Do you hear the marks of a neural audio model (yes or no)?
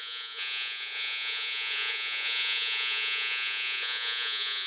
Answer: yes